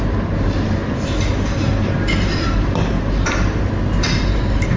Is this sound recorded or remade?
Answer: recorded